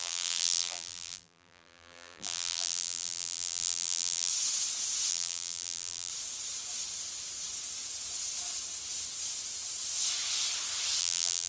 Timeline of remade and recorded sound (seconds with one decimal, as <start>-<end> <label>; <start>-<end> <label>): 0.0-4.3 remade; 4.3-5.1 recorded; 5.1-6.1 remade; 6.1-11.0 recorded; 11.0-11.5 remade

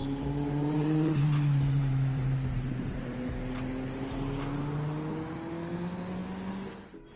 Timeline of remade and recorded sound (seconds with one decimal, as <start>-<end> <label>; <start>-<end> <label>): 0.0-3.3 remade; 3.3-7.2 recorded

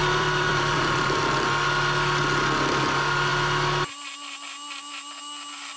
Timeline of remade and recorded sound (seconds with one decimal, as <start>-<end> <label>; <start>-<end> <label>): 0.0-1.2 remade; 1.2-5.8 recorded

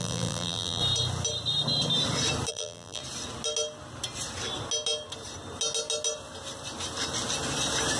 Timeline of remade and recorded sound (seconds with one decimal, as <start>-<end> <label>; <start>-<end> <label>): 0.0-0.8 remade; 0.8-2.5 recorded; 2.5-3.0 remade; 3.0-8.0 recorded

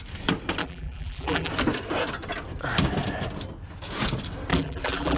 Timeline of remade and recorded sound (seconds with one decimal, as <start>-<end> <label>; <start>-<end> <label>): 0.0-0.6 recorded; 0.6-1.5 remade; 1.5-4.5 recorded; 4.5-5.2 remade